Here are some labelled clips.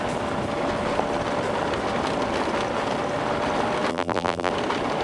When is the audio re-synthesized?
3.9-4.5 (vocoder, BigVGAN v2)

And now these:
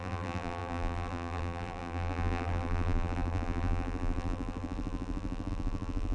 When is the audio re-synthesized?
0.0-6.1 (vocoder, BigVGAN v2)